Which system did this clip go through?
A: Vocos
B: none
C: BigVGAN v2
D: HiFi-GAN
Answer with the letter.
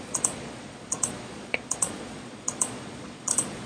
A